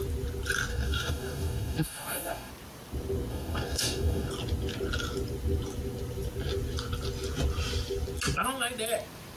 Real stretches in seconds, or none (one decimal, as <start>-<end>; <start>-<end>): 0.0-0.7; 2.5-3.3; 4.3-9.4